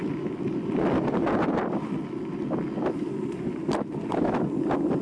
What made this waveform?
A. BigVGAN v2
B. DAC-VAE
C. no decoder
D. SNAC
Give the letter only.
C